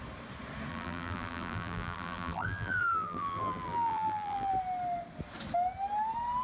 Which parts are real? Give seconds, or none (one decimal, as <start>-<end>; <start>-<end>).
0.0-0.7; 4.5-6.4